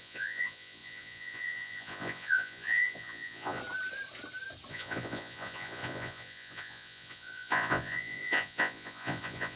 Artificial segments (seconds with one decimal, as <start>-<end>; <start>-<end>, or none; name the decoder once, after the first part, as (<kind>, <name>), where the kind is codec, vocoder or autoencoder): 0.0-3.6 (vocoder, Vocos); 4.7-9.6